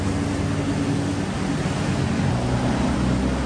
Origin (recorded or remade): recorded